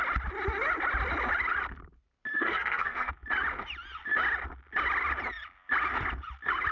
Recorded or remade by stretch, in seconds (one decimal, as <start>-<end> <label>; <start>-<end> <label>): 0.0-2.3 recorded; 2.3-3.1 remade; 3.1-6.7 recorded